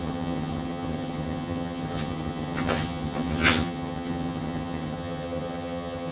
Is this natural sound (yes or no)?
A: no